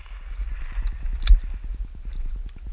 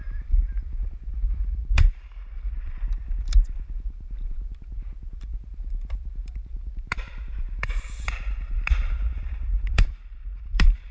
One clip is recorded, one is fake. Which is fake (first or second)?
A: second